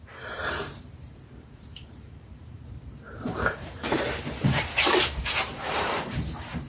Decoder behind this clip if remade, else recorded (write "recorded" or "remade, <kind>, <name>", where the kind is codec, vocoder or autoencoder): remade, vocoder, BigVGAN v2